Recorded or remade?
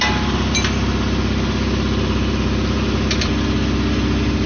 recorded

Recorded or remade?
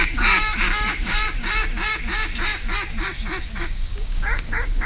remade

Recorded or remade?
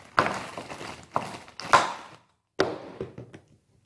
recorded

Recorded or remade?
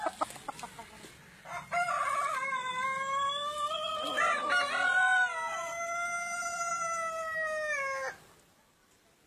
recorded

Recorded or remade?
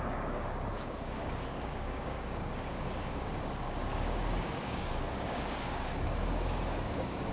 remade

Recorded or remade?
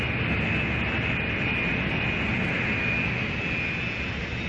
recorded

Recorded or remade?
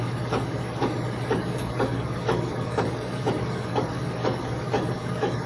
remade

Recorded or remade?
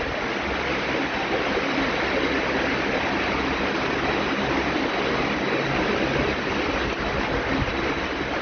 recorded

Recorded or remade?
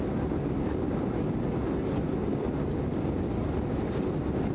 recorded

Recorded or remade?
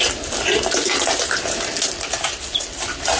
recorded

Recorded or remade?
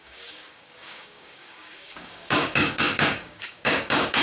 remade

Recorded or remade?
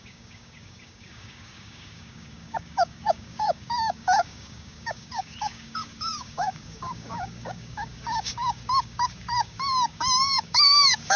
remade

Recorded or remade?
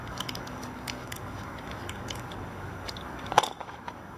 remade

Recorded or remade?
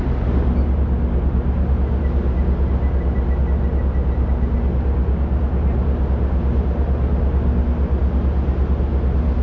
recorded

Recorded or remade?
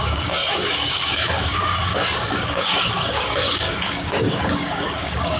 remade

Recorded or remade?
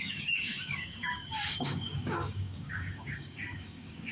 remade